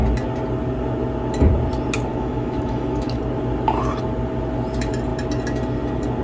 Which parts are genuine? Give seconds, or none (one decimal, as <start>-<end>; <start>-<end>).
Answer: 0.0-2.1; 3.2-6.2